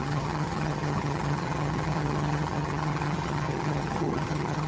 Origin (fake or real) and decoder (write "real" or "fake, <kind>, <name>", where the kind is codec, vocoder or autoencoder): fake, vocoder, HiFi-GAN